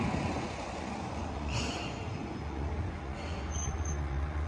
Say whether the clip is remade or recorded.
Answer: remade